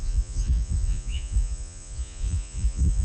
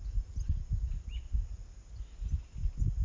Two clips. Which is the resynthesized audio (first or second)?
first